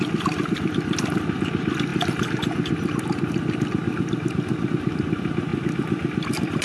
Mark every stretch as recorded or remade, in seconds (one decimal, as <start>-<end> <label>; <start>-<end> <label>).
0.0-6.6 recorded